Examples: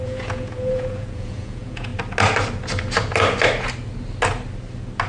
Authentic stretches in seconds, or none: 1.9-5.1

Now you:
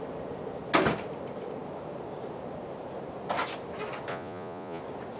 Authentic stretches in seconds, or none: 0.0-4.1; 4.8-5.2

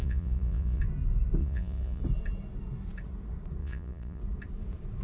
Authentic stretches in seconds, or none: 0.8-1.4; 2.0-3.6; 4.2-5.0

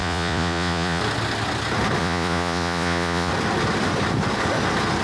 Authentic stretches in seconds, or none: 1.0-2.0; 3.3-5.0